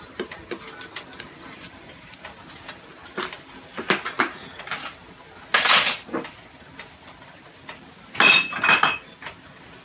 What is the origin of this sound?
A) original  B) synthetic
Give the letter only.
A